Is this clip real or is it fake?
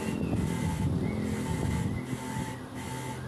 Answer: real